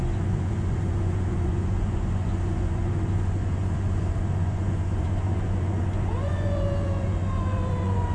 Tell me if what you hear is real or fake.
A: fake